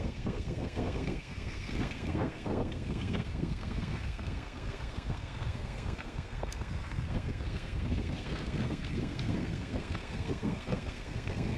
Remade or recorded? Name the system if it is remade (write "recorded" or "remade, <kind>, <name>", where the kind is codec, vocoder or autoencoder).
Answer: remade, codec, SNAC